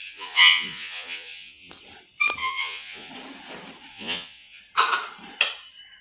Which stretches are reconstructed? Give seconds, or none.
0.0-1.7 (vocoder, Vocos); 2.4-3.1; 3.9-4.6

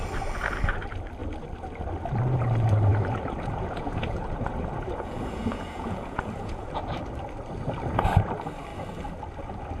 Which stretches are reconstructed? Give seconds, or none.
2.9-6.8 (vocoder, Vocos)

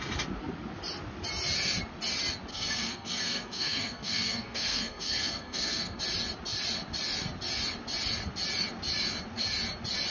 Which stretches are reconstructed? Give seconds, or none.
2.5-6.0 (codec, SNAC)

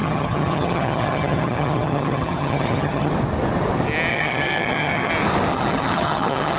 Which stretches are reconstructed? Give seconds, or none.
0.0-3.1 (vocoder, HiFi-GAN); 4.1-5.1; 5.5-6.6

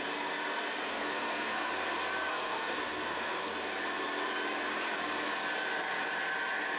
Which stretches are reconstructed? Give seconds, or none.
0.9-1.7 (codec, SNAC); 2.3-3.5

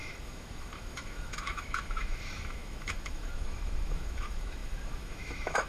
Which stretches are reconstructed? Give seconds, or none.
0.0-5.7 (autoencoder, DAC-VAE)

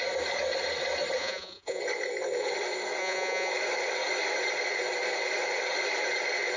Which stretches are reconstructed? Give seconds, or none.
1.2-1.8 (vocoder, Vocos); 3.0-3.5

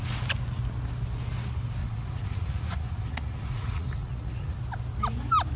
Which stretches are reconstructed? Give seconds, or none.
1.8-4.6 (vocoder, Vocos)